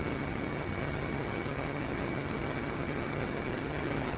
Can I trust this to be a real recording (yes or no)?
no